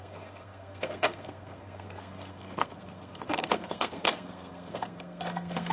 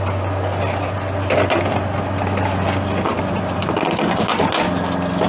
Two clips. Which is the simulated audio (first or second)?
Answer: first